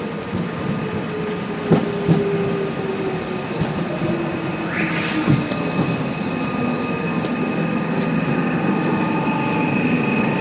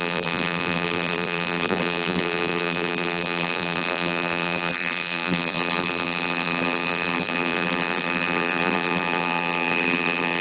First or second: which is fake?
second